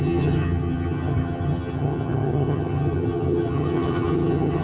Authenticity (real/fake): fake